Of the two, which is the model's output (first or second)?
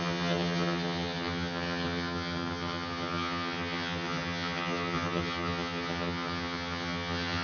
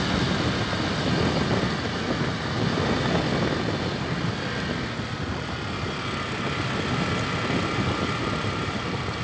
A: first